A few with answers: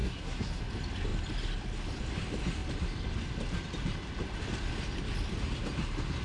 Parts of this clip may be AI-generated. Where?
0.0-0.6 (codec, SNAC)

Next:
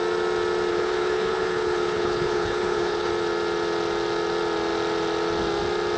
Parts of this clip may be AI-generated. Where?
0.7-3.1 (codec, HILCodec)

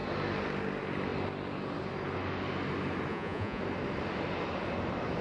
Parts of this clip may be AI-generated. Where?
3.1-3.6 (vocoder, Vocos)